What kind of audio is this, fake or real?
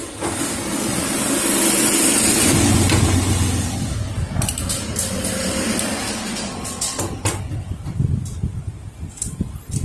real